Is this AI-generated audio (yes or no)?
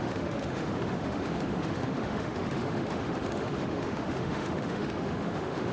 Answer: yes